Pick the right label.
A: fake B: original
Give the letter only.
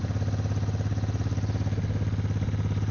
B